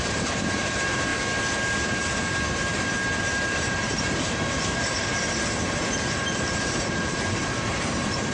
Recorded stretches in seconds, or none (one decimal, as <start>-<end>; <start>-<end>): 1.1-1.8